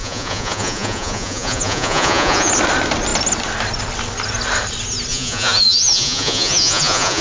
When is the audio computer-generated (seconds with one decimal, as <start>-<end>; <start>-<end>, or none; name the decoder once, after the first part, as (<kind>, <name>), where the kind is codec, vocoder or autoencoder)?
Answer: 0.0-2.5 (vocoder, Vocos); 5.1-7.2